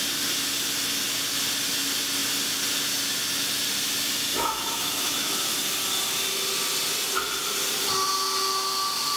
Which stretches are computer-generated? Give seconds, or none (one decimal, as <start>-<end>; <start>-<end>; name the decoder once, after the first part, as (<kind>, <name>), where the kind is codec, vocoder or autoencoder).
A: 4.3-5.3 (autoencoder, DAC-VAE)